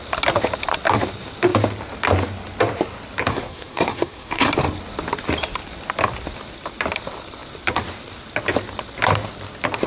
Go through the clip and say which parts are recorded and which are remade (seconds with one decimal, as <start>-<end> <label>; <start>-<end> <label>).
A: 0.0-3.3 recorded; 3.3-4.5 remade; 4.5-9.9 recorded